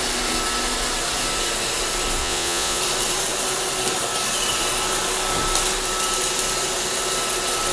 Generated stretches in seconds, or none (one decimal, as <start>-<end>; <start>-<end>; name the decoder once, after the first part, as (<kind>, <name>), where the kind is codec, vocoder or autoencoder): 2.2-2.8 (vocoder, Vocos)